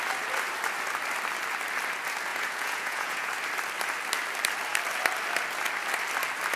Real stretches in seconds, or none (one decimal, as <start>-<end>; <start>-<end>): 0.0-2.3; 3.3-6.6